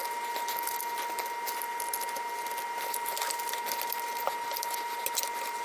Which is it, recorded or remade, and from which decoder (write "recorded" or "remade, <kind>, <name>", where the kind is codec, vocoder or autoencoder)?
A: recorded